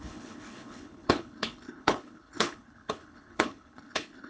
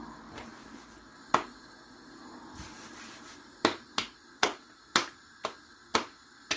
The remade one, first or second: first